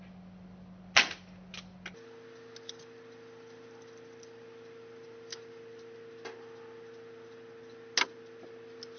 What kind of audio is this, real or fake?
real